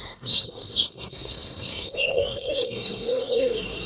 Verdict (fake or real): fake